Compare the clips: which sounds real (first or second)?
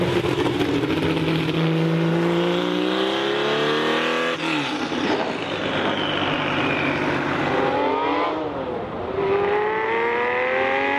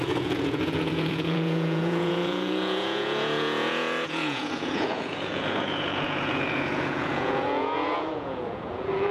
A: first